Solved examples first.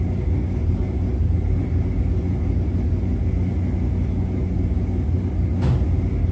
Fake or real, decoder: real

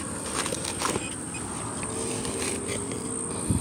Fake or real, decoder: real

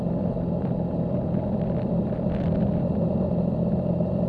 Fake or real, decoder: real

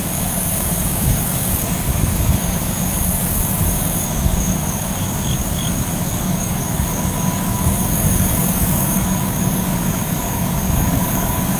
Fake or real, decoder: fake, codec, DAC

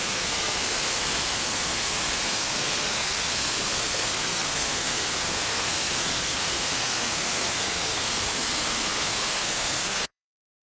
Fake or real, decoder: fake, codec, SNAC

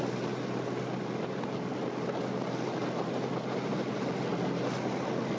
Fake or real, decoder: real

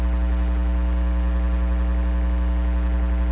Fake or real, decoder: real